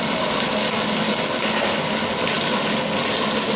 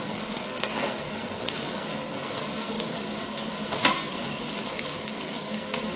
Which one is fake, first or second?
second